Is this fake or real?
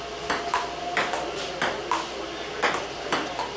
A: real